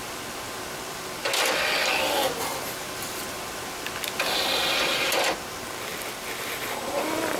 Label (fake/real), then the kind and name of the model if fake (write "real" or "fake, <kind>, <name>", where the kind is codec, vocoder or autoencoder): real